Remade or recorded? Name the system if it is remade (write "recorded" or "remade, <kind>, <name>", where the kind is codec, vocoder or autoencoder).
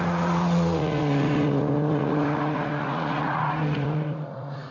remade, vocoder, Vocos